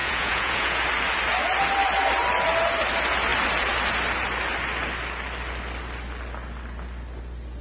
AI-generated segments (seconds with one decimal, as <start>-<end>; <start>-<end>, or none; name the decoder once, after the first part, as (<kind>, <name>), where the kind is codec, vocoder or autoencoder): 0.0-0.8 (vocoder, Vocos)